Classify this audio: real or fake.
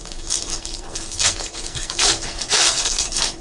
fake